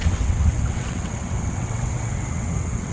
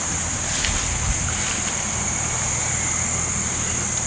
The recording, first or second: second